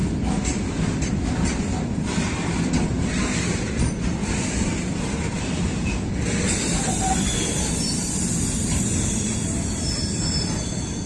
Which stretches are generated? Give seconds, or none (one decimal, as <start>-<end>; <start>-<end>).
none